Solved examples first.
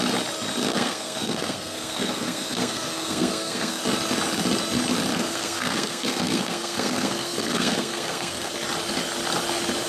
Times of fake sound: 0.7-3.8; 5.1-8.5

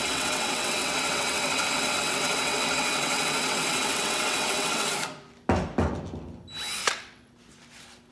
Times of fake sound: 0.0-4.9; 6.8-7.3

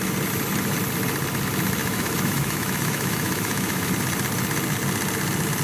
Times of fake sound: 1.8-3.9

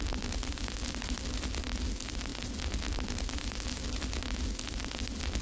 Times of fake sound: none

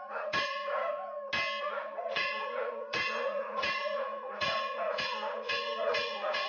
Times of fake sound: 0.0-0.8; 1.6-6.5

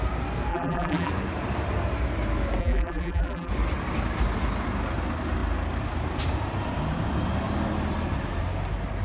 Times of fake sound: 0.5-1.1; 2.6-3.5